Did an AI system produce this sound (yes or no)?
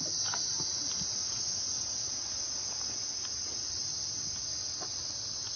no